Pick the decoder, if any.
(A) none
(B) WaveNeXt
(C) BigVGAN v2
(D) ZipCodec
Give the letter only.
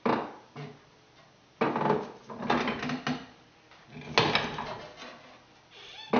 A